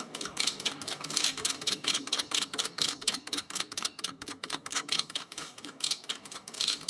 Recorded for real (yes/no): no